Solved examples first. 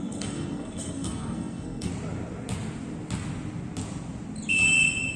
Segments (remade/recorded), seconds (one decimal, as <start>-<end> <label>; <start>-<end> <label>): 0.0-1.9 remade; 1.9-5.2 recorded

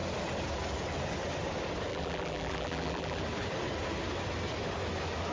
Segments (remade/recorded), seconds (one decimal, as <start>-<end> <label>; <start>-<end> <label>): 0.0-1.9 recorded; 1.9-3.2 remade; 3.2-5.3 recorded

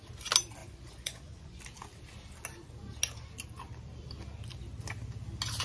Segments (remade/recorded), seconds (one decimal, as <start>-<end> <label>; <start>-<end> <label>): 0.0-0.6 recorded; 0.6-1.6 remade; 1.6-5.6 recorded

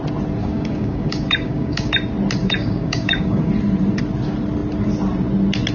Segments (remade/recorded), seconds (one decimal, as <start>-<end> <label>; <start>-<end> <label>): 0.0-0.4 recorded; 0.4-1.9 remade; 1.9-2.4 recorded; 2.4-3.5 remade; 3.5-5.7 recorded

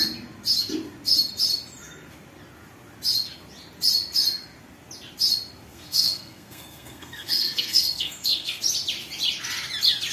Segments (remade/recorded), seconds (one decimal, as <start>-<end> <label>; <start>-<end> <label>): 0.0-5.7 recorded; 5.7-8.6 remade; 8.6-10.1 recorded